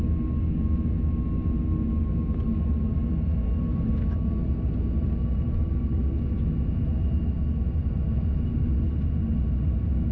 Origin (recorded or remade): recorded